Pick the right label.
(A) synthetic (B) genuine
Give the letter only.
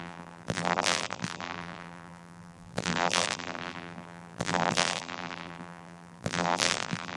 A